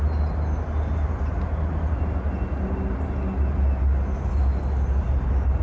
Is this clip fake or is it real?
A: real